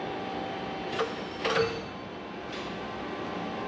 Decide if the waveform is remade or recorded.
recorded